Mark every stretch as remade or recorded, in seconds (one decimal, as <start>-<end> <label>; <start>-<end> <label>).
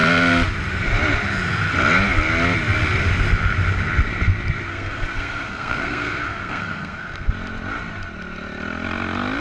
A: 0.0-4.7 recorded; 4.7-7.3 remade; 7.3-9.4 recorded